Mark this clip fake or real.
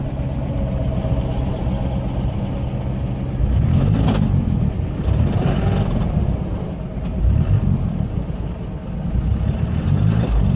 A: real